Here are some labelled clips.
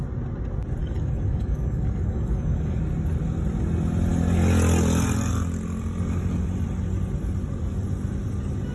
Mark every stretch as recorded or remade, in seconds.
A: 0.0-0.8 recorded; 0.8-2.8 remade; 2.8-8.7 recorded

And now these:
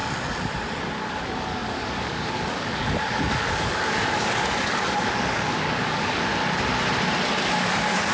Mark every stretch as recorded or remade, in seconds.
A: 0.0-1.1 recorded; 1.1-6.3 remade; 6.3-7.5 recorded; 7.5-8.1 remade

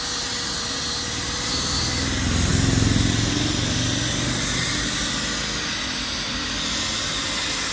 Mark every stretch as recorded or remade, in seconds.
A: 0.0-7.7 recorded

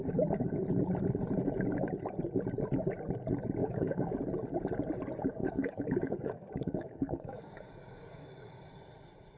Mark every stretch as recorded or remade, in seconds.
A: 0.0-3.6 recorded; 3.6-4.2 remade; 4.2-5.4 recorded; 5.4-8.7 remade; 8.7-9.4 recorded

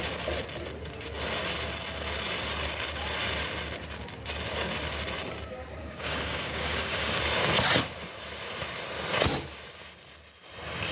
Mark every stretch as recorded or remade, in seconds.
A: 0.0-5.8 recorded; 5.8-7.2 remade; 7.2-10.9 recorded

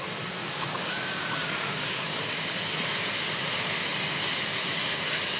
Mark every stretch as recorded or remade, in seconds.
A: 0.0-0.4 recorded; 0.4-2.2 remade; 2.2-5.4 recorded